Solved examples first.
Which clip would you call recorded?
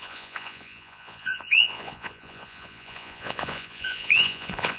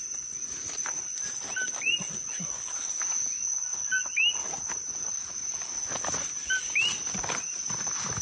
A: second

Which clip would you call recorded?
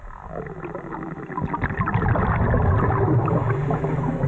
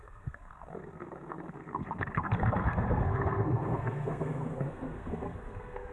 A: first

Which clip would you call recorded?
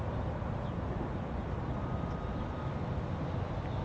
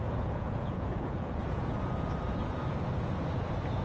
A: first